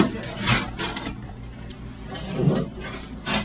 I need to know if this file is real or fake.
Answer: fake